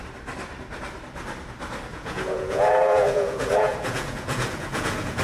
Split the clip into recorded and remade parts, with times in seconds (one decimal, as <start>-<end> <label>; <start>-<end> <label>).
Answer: 0.0-1.9 recorded; 1.9-5.2 remade